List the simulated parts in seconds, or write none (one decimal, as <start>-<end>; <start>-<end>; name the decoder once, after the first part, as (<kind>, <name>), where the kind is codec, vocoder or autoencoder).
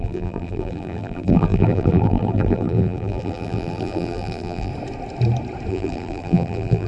0.0-4.7 (vocoder, BigVGAN v2); 5.7-6.9